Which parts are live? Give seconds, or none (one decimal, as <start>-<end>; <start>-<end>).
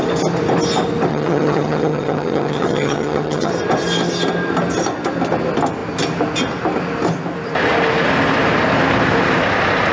0.0-1.1; 3.5-9.9